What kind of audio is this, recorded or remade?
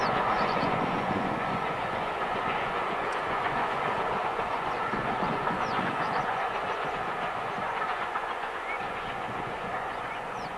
remade